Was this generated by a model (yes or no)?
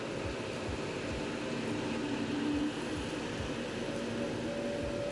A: no